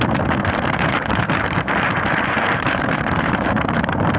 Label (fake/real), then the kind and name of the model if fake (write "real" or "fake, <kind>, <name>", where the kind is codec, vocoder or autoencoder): fake, vocoder, BigVGAN v2